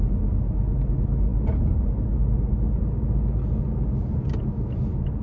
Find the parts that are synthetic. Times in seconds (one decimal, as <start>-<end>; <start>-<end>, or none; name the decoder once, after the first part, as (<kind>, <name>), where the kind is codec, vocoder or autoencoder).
none